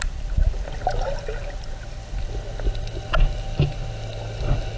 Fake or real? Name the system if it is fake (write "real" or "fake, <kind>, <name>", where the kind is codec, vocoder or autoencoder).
real